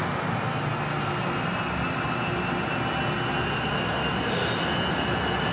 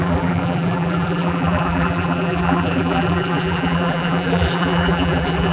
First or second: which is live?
first